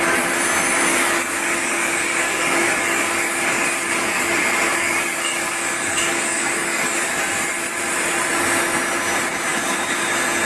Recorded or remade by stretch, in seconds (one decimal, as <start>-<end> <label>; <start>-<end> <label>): 0.0-0.9 recorded; 0.9-4.3 remade; 4.3-4.7 recorded; 4.7-7.1 remade; 7.1-9.5 recorded; 9.5-10.1 remade; 10.1-10.5 recorded